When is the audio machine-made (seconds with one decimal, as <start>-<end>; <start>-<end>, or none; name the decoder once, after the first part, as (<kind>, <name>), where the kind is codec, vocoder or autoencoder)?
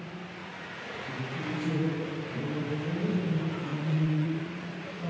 0.4-1.2 (vocoder, Vocos); 3.7-5.1